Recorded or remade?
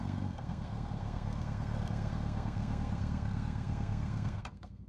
remade